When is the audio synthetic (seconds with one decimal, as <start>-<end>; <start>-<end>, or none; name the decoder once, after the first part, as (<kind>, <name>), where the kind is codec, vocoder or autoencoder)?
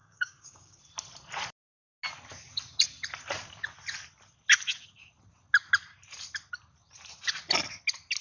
0.0-0.8 (codec, DAC)